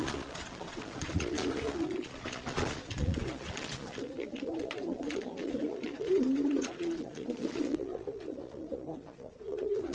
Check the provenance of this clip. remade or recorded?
remade